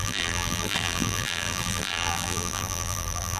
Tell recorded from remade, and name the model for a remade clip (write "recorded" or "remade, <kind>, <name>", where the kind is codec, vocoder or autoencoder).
remade, vocoder, BigVGAN v2